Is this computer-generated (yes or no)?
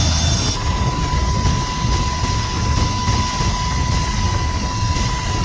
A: no